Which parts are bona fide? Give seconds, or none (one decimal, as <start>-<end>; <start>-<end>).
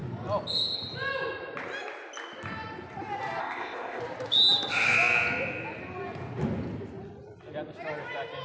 0.0-3.4; 4.0-8.4